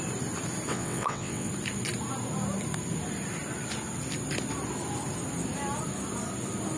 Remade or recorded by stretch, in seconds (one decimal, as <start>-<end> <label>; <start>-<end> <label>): 0.0-0.7 recorded; 0.7-1.5 remade; 1.5-6.8 recorded

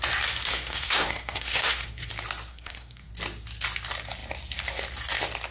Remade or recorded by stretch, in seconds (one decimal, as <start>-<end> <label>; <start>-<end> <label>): 0.0-0.5 recorded; 0.5-2.1 remade; 2.1-2.5 recorded; 2.5-3.1 remade; 3.1-5.5 recorded

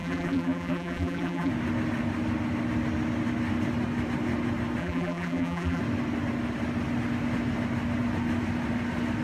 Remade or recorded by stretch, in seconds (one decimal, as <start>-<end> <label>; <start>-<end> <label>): 0.0-1.5 remade; 1.5-4.8 recorded; 4.8-5.8 remade; 5.8-9.2 recorded

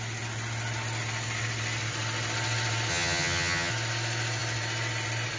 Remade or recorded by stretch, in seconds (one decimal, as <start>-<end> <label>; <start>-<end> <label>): 0.0-2.9 recorded; 2.9-3.7 remade; 3.7-5.4 recorded

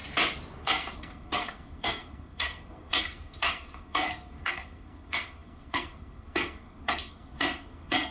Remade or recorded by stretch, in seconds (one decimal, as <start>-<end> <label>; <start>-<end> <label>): 0.0-0.6 recorded; 0.6-8.1 remade

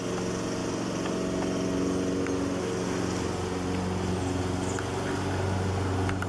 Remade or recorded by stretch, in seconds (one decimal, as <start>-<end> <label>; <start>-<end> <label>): 0.0-6.3 recorded

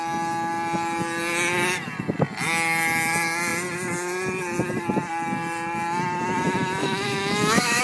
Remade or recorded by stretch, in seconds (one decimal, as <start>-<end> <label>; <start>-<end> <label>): 0.0-6.8 recorded; 6.8-7.8 remade